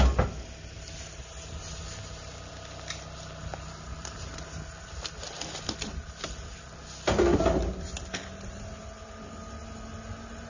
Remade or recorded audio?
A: recorded